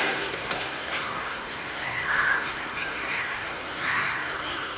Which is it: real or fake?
fake